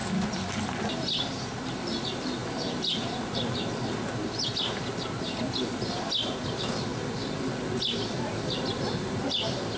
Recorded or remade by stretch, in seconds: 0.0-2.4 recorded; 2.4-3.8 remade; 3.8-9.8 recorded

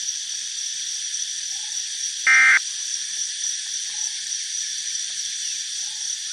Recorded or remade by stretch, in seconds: 0.0-2.9 recorded; 2.9-5.6 remade; 5.6-6.3 recorded

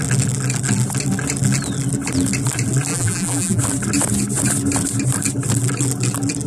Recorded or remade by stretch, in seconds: 0.0-2.9 recorded; 2.9-3.6 remade; 3.6-6.5 recorded

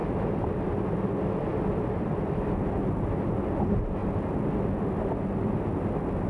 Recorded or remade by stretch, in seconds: 0.0-0.5 remade; 0.5-1.5 recorded; 1.5-2.8 remade; 2.8-6.3 recorded

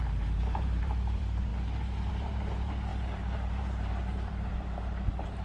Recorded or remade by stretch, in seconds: 0.0-1.5 remade; 1.5-2.1 recorded; 2.1-5.4 remade